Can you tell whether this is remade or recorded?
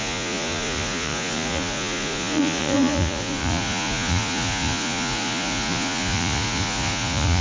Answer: remade